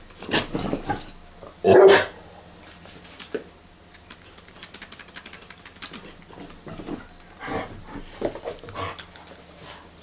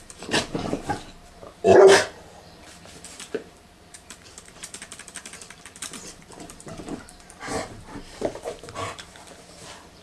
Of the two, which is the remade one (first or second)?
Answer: second